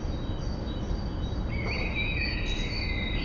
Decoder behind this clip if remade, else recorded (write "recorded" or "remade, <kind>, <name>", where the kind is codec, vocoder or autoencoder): recorded